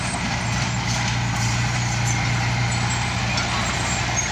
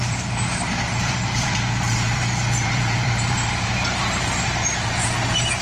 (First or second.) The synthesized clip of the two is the second